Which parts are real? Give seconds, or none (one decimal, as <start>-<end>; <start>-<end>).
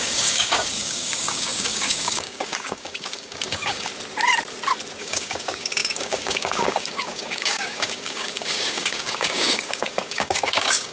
3.9-5.0